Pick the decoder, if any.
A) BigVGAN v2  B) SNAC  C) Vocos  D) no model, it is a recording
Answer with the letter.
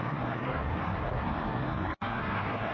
B